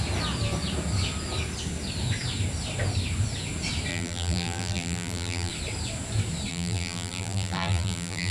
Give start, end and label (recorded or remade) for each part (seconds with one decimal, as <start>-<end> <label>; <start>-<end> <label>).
0.0-3.9 recorded; 3.9-5.5 remade; 5.5-6.5 recorded; 6.5-8.3 remade